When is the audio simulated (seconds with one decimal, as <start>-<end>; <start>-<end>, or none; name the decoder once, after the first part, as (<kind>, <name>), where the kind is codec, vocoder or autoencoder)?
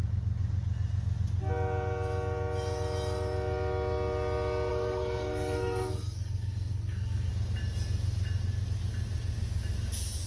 4.7-7.3 (codec, SNAC)